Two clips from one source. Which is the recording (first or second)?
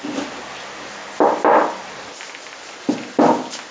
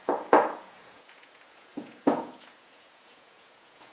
first